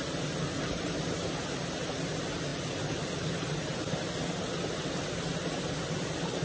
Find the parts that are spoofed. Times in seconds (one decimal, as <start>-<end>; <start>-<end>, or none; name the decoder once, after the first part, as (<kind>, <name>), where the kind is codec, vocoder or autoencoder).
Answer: none